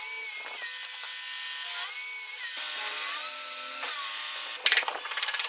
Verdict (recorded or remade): recorded